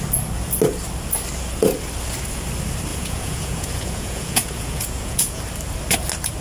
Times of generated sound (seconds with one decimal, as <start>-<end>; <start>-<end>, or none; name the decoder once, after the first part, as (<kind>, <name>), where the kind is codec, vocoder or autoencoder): 2.9-5.4 (vocoder, Vocos)